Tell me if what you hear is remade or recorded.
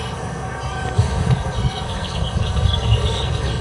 remade